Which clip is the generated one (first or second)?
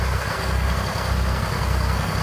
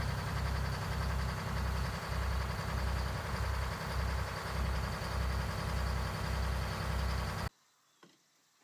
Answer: first